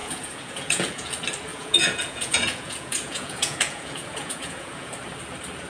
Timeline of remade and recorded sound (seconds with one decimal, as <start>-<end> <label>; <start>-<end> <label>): 0.0-1.1 remade; 1.1-1.5 recorded; 1.5-4.9 remade; 4.9-5.7 recorded